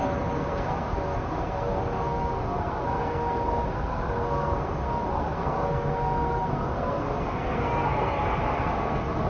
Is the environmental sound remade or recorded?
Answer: remade